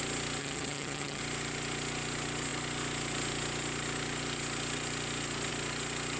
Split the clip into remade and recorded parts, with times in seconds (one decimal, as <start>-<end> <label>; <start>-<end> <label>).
0.0-0.4 recorded; 0.4-1.2 remade; 1.2-6.2 recorded